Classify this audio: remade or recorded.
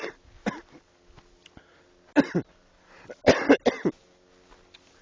recorded